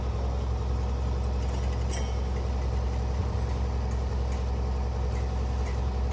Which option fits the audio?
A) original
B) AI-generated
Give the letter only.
A